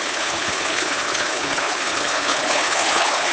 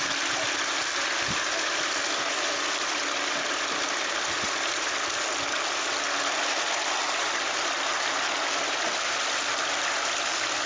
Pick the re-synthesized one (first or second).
first